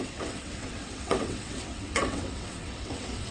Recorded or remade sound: remade